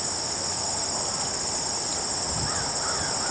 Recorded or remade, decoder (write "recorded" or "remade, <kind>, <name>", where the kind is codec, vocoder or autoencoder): recorded